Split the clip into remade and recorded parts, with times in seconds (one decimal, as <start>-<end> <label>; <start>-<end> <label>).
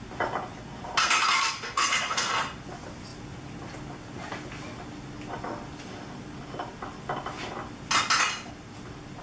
0.0-1.0 recorded; 1.0-2.3 remade; 2.3-9.2 recorded